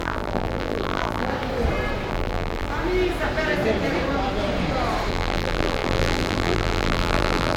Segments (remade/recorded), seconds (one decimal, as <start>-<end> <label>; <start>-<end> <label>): 0.0-1.3 remade; 1.3-2.1 recorded; 2.1-2.7 remade; 2.7-5.1 recorded; 5.1-7.6 remade